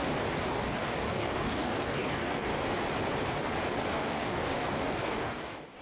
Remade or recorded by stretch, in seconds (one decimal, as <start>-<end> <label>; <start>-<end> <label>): 0.0-0.5 recorded; 0.5-2.5 remade; 2.5-3.9 recorded; 3.9-5.8 remade